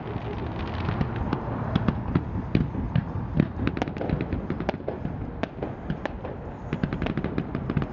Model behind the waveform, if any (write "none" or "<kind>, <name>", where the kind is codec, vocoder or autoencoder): none